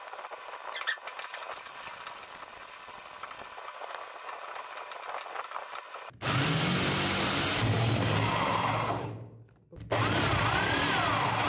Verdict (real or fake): real